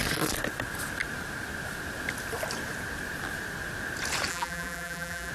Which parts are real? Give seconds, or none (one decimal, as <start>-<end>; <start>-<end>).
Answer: 0.0-4.3